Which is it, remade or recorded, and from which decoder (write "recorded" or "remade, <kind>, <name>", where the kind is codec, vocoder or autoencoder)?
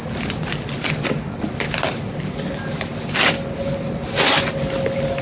recorded